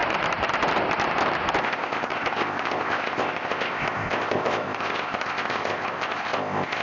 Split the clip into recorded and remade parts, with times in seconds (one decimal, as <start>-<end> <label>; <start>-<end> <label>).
0.0-1.6 recorded; 1.6-6.8 remade